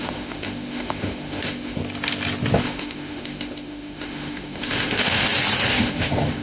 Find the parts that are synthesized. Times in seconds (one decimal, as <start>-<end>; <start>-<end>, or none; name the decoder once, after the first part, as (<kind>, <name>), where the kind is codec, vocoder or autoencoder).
0.0-1.8 (autoencoder, DAC-VAE); 2.6-5.2; 5.7-6.4